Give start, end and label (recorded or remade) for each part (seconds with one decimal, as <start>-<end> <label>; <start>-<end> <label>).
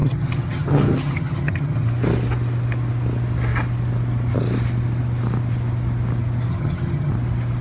0.0-1.9 remade; 1.9-6.5 recorded; 6.5-7.1 remade; 7.1-7.6 recorded